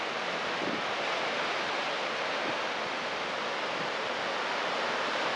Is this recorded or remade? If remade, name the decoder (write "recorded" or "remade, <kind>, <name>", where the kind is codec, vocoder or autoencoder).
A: recorded